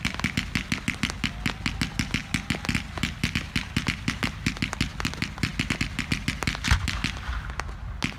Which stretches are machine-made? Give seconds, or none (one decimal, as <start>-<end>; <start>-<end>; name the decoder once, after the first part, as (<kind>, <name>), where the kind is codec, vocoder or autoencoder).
none